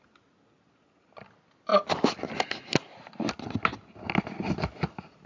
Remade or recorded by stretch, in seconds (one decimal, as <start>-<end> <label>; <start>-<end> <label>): 0.0-5.3 recorded